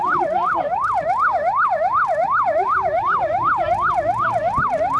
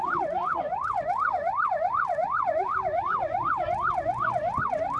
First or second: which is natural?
first